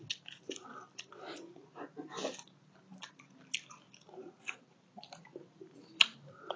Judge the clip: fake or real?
real